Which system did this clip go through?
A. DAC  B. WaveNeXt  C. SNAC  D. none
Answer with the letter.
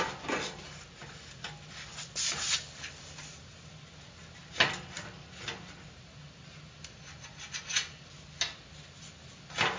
D